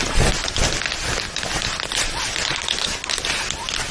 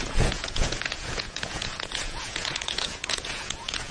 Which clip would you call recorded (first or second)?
first